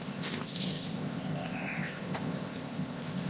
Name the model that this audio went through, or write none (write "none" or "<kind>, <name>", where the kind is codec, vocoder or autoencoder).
codec, ZipCodec